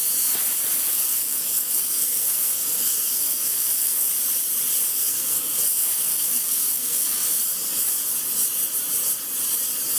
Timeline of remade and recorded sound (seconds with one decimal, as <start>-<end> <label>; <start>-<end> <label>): 0.0-0.8 recorded; 0.8-4.1 remade; 4.1-4.9 recorded; 4.9-7.4 remade; 7.4-10.0 recorded